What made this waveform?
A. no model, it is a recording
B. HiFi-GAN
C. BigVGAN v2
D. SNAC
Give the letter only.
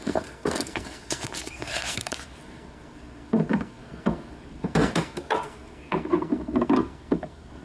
D